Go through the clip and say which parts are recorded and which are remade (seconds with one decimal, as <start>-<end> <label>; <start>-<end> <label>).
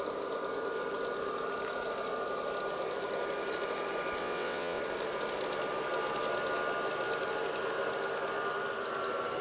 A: 0.0-4.2 recorded; 4.2-4.8 remade; 4.8-9.4 recorded